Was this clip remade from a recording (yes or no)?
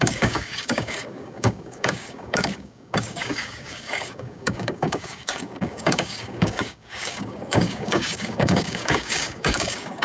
yes